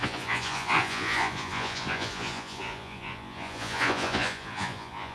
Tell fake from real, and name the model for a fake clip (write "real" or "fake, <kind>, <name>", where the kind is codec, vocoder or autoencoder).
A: fake, vocoder, Vocos